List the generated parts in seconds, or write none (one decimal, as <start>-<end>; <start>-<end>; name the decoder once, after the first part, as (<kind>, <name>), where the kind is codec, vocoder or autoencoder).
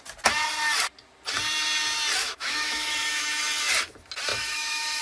2.2-3.4 (autoencoder, DAC-VAE); 4.3-5.0